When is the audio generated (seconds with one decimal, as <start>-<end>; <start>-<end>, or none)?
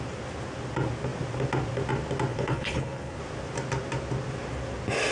2.3-3.2